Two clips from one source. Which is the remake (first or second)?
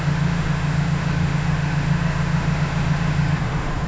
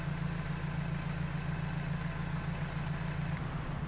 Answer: first